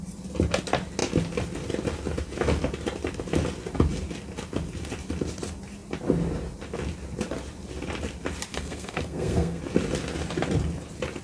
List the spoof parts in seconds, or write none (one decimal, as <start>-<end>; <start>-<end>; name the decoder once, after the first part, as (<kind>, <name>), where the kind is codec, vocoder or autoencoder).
8.5-9.6 (codec, SNAC)